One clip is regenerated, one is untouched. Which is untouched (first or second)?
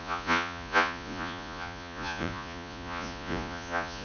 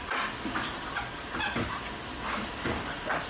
second